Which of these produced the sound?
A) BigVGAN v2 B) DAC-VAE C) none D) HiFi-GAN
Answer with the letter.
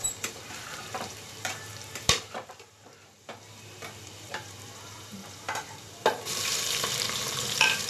A